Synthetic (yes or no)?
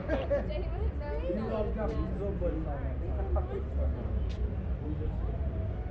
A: no